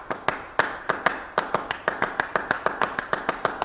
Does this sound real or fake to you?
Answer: real